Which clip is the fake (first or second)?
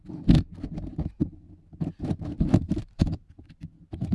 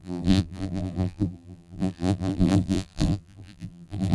second